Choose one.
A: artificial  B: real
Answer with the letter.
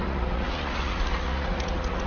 A